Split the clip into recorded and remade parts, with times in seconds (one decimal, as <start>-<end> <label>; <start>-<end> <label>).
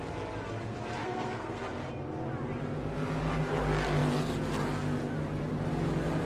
0.0-1.0 recorded; 1.0-1.6 remade; 1.6-6.2 recorded